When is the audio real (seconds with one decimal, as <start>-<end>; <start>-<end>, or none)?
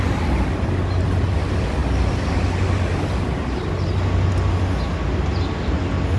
0.0-6.2